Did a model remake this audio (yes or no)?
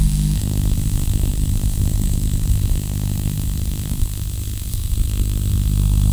yes